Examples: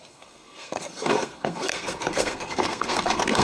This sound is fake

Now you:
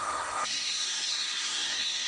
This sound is fake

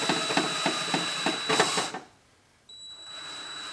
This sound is real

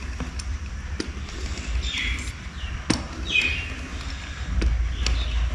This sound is real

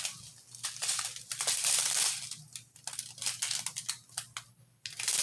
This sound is real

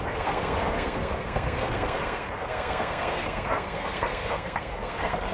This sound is fake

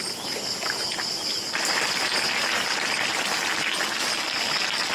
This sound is real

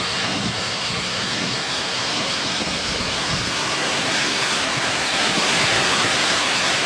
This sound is fake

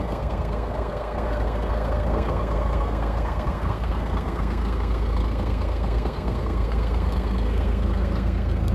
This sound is fake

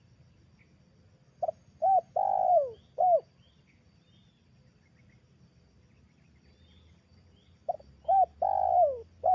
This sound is real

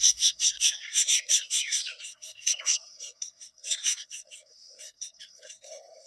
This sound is fake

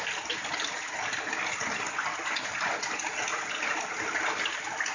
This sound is real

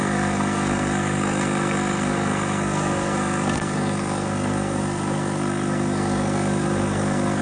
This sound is fake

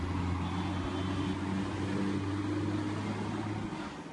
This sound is real